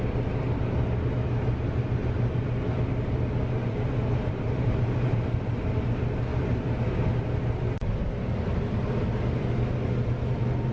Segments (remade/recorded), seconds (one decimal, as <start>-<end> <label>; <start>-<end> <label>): 0.0-3.6 recorded; 3.6-5.4 remade; 5.4-6.3 recorded; 6.3-6.9 remade; 6.9-10.7 recorded